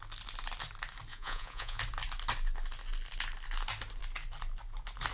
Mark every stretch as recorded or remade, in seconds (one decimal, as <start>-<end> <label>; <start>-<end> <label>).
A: 0.0-1.1 recorded; 1.1-1.8 remade; 1.8-5.1 recorded